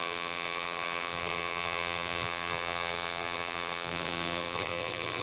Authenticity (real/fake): fake